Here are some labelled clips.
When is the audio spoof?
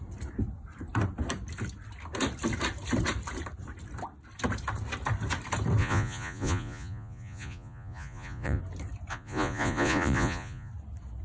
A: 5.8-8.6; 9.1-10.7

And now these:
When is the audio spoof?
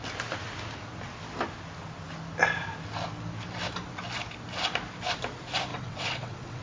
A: 5.7-6.6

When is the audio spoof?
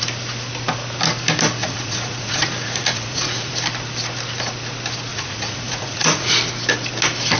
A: 1.6-3.5; 5.1-6.4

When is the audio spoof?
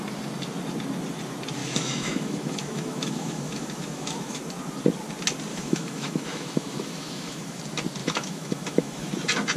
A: 1.6-4.4; 5.5-7.6; 8.0-9.1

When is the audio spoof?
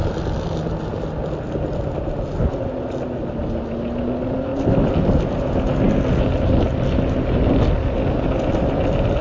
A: none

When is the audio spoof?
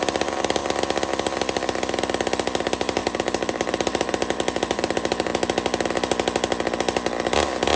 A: 0.0-0.6; 2.6-5.3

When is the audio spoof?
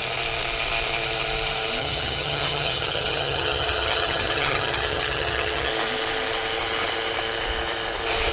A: 1.8-5.7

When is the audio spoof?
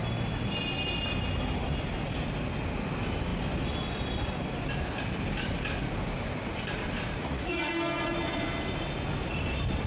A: 7.2-7.7